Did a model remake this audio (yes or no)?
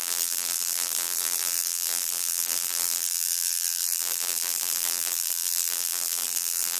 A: yes